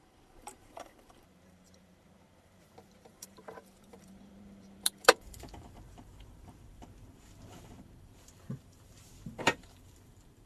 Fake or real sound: fake